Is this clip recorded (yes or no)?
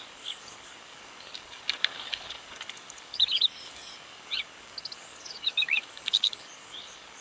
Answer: no